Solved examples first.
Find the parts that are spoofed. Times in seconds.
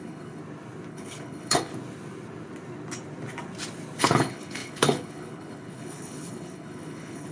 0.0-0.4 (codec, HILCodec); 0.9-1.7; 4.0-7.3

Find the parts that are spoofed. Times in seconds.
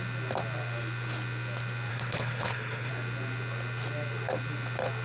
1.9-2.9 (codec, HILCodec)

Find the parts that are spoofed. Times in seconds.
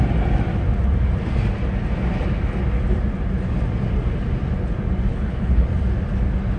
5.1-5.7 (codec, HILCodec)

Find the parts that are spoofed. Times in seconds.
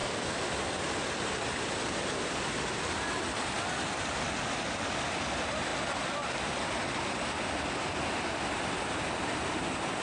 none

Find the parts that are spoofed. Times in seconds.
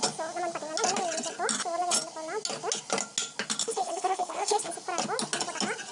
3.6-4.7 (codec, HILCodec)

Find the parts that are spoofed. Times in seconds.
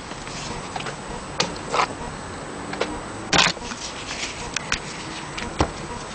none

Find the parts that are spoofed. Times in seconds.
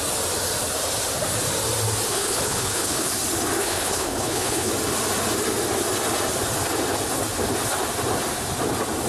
2.1-3.1 (codec, HILCodec); 3.6-4.7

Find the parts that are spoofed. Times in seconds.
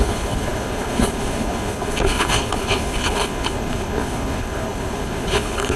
0.0-5.8 (codec, HILCodec)